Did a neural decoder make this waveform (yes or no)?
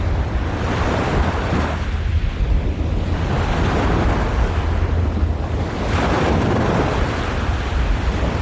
no